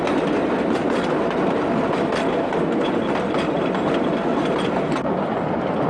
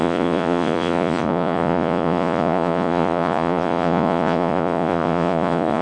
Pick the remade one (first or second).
second